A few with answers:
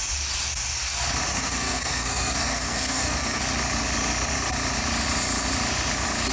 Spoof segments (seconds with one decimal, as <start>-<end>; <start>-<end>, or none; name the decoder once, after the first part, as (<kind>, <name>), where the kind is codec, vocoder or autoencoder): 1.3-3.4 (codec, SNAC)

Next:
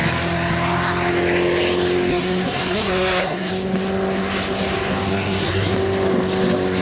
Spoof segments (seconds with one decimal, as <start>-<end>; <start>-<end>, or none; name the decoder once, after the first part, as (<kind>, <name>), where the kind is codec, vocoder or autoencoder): 2.1-3.5 (codec, SNAC); 5.1-5.7

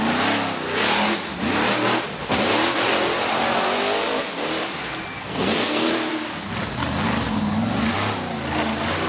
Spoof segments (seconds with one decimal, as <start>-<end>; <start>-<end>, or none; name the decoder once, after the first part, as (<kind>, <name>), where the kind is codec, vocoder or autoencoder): 5.1-5.9 (codec, SNAC)

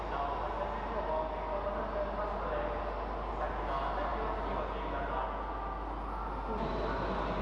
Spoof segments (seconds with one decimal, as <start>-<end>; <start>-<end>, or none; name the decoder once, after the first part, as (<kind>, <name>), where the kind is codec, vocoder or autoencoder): none

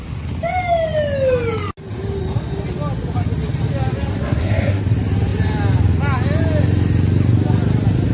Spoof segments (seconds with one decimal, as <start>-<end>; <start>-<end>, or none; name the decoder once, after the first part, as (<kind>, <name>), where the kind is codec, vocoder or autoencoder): 4.1-4.8 (codec, SNAC)

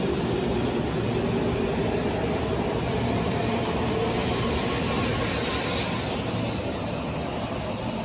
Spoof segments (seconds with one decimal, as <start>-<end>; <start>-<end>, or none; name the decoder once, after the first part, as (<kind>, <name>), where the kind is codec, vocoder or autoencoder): none